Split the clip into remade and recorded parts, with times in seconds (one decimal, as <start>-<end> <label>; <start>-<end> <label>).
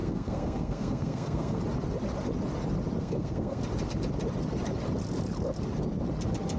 0.0-1.6 remade; 1.6-3.0 recorded; 3.0-3.6 remade; 3.6-6.6 recorded